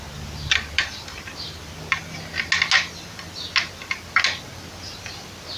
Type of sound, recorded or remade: recorded